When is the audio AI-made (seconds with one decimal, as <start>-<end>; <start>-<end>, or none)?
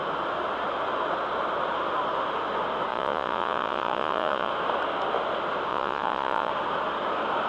2.9-4.5; 5.7-6.5